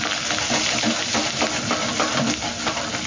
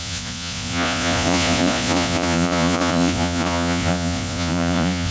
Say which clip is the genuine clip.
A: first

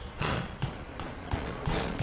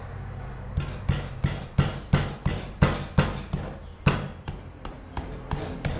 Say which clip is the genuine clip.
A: second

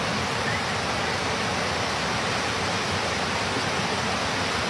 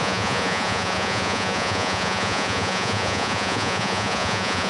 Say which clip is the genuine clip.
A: first